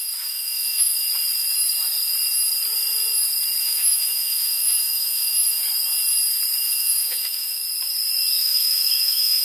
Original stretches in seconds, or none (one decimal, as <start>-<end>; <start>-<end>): 0.9-3.6; 5.6-6.6; 7.6-8.4